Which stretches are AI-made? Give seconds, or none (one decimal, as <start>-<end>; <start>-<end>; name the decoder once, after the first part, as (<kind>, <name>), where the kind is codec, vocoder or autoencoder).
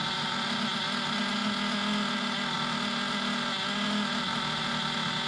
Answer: none